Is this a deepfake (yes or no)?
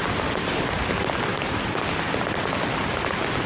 no